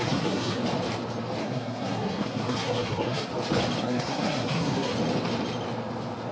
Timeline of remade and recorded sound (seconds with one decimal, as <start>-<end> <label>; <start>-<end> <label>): 0.0-0.6 remade; 0.6-1.4 recorded; 1.4-3.3 remade; 3.3-3.8 recorded; 3.8-4.9 remade; 4.9-6.3 recorded